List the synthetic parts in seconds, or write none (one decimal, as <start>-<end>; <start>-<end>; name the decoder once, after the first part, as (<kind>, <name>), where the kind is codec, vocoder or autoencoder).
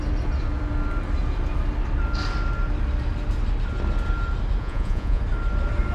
4.6-5.2 (vocoder, Vocos)